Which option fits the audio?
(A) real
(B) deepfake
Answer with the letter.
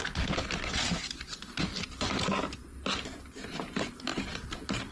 A